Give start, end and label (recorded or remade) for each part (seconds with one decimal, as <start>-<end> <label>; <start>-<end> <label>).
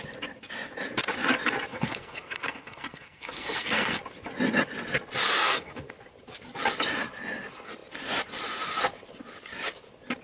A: 0.0-1.7 recorded; 1.7-4.0 remade; 4.0-5.4 recorded; 5.4-5.9 remade; 5.9-10.2 recorded